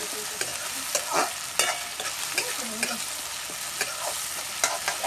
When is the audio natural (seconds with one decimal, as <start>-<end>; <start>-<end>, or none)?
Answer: 0.0-5.1